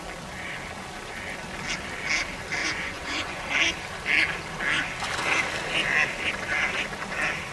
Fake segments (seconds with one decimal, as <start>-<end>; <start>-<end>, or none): 2.6-3.4